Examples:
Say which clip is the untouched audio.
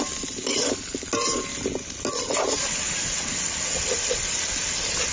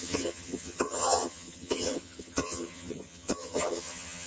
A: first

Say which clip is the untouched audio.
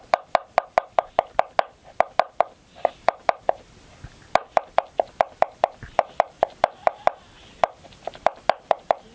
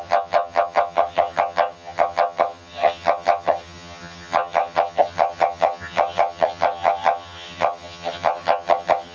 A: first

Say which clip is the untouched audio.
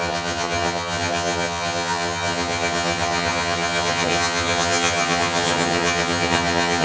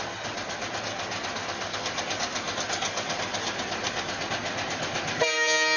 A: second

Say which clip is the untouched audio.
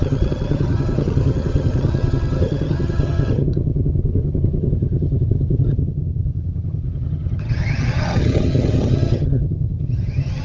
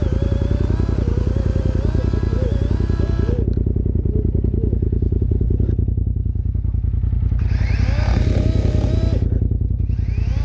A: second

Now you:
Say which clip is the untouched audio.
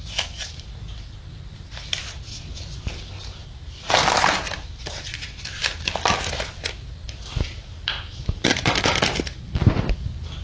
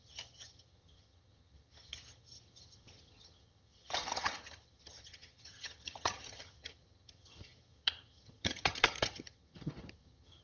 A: first